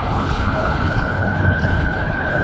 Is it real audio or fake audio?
fake